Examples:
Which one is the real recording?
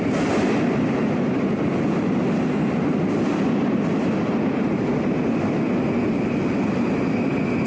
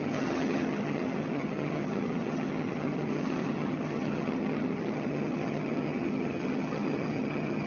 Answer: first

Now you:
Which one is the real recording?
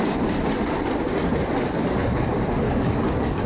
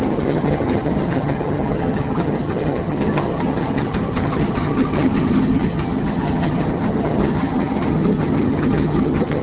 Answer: first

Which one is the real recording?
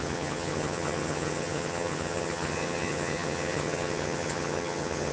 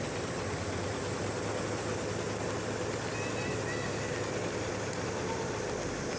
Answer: second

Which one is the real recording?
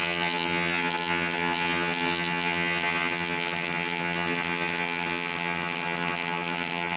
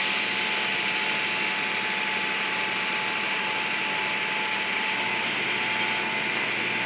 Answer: second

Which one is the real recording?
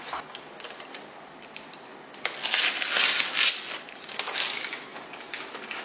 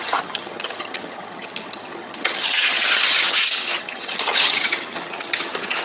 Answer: first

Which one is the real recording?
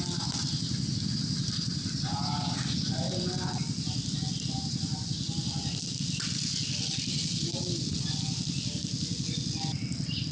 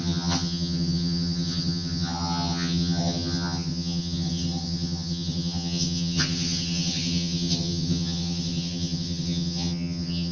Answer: first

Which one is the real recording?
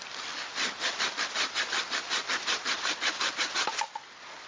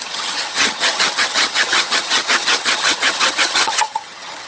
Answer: first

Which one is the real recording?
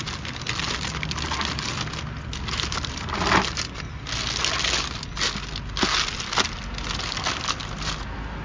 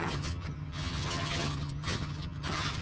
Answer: first